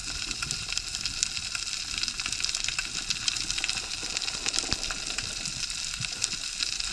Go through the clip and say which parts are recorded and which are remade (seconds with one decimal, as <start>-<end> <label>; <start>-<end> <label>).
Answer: 0.0-6.9 recorded